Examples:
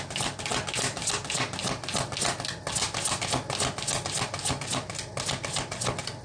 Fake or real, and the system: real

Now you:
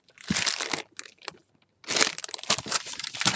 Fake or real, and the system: real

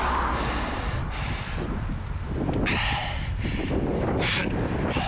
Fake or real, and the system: fake, vocoder, BigVGAN v2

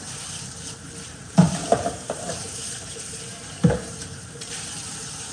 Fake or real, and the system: fake, vocoder, BigVGAN v2